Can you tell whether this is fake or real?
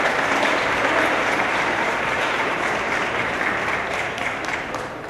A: fake